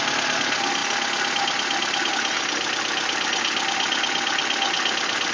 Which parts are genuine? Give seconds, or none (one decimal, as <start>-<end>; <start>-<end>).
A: 0.0-5.3